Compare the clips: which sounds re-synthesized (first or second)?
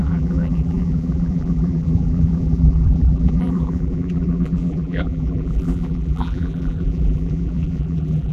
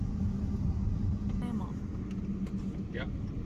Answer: first